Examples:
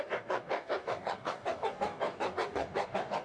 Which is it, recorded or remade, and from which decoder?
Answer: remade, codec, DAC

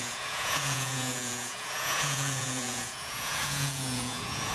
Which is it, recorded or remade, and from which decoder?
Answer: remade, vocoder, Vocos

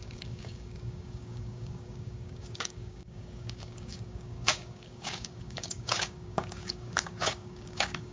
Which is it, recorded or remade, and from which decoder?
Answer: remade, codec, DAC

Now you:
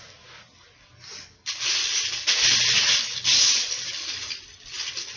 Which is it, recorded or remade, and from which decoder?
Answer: recorded